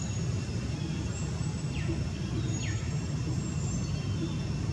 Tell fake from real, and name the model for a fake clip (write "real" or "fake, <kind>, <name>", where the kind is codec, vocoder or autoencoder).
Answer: real